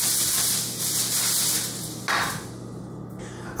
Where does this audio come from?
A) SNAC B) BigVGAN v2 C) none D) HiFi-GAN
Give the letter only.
C